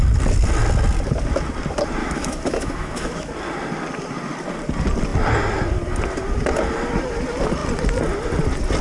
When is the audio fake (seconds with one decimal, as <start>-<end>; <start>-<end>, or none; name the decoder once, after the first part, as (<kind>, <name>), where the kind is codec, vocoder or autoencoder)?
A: 2.0-3.3 (autoencoder, DAC-VAE)